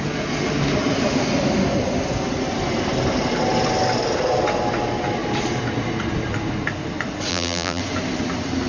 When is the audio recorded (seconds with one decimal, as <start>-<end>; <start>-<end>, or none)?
0.0-7.3; 7.8-8.7